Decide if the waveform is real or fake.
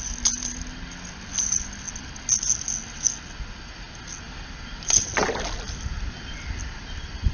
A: real